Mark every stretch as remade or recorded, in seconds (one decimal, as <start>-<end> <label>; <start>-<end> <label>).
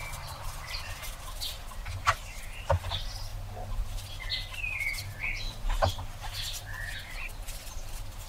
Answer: 0.0-3.3 remade; 3.3-6.9 recorded; 6.9-8.3 remade